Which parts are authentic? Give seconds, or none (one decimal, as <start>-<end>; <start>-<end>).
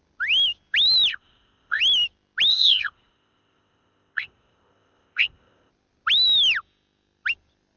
0.0-1.1; 1.8-2.5; 5.7-7.8